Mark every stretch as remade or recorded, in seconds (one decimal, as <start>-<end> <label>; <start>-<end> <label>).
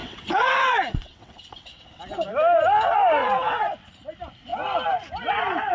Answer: 0.0-2.0 remade; 2.0-3.2 recorded; 3.2-3.9 remade; 3.9-5.7 recorded